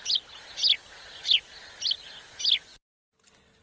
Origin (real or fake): real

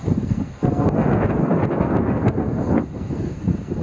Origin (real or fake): fake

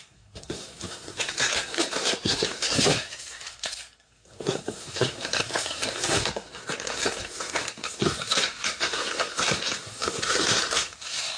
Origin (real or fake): fake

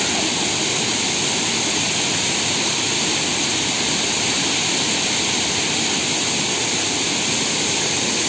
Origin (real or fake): real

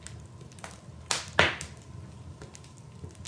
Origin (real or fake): real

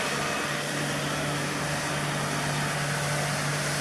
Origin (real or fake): real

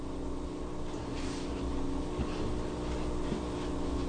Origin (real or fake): real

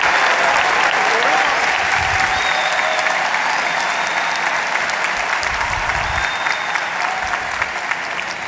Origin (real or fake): real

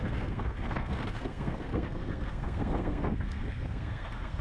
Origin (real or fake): fake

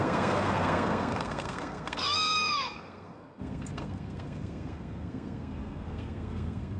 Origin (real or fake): fake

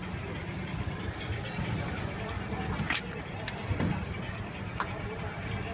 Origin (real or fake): real